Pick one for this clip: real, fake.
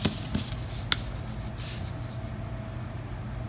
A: real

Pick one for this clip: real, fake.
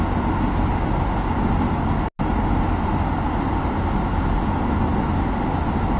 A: real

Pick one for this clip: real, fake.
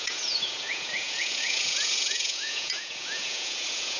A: fake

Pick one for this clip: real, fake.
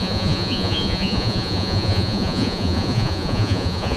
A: fake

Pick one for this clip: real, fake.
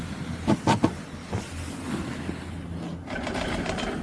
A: real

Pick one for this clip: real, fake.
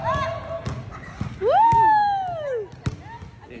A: real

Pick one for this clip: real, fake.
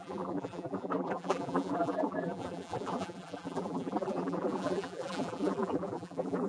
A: fake